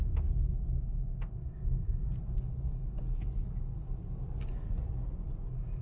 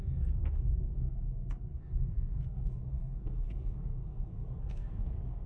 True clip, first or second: first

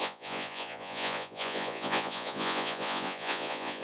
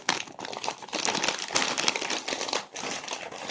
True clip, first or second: second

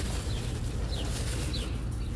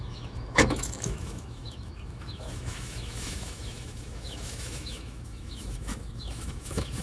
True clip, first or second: first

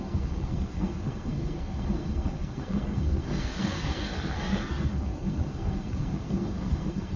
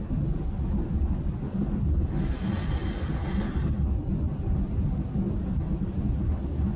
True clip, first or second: second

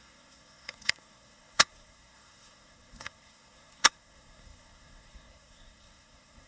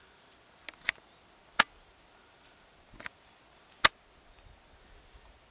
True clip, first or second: second